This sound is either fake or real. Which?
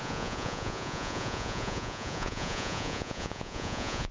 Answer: fake